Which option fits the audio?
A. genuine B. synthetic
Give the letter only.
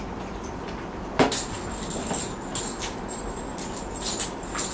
A